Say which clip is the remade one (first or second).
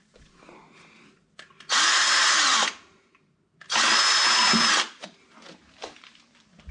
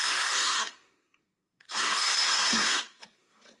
second